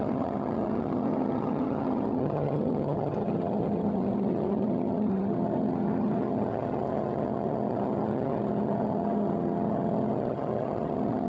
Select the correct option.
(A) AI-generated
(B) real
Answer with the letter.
A